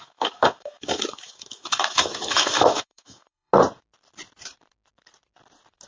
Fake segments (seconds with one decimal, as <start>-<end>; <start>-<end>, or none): 0.0-3.5